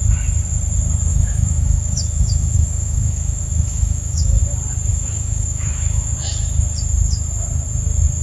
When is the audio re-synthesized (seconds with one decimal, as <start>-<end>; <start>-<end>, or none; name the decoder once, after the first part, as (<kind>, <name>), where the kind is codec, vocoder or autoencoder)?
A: 1.1-4.4 (autoencoder, DAC-VAE); 4.9-6.1